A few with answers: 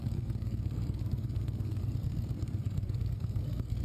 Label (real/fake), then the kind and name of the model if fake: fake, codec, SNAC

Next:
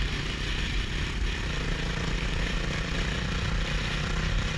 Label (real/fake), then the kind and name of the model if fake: real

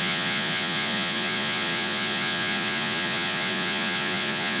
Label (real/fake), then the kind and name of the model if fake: fake, vocoder, Vocos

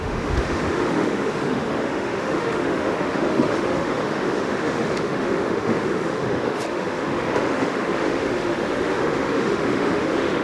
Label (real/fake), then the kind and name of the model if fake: fake, autoencoder, DAC-VAE